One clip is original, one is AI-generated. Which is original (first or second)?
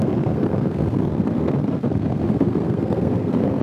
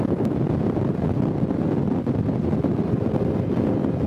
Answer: second